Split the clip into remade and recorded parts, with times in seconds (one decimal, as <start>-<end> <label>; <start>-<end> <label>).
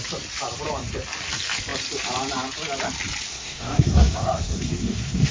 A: 0.0-3.3 recorded; 3.3-5.3 remade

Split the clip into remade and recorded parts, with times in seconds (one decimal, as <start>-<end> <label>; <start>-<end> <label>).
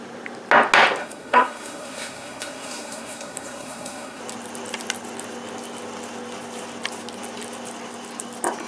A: 0.0-1.0 recorded; 1.0-4.2 remade; 4.2-8.7 recorded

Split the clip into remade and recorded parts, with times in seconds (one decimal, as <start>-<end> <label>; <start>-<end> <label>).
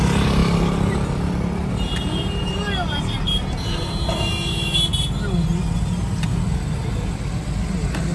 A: 0.0-8.1 recorded